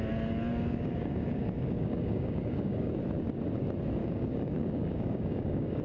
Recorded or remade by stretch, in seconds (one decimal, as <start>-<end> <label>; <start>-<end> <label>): 0.0-0.5 recorded; 0.5-3.0 remade; 3.0-4.0 recorded; 4.0-5.8 remade